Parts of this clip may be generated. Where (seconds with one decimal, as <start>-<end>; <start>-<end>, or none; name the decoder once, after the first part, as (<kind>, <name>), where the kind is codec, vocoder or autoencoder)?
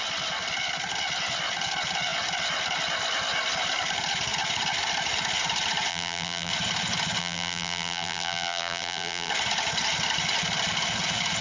5.9-6.5 (vocoder, BigVGAN v2); 7.2-9.3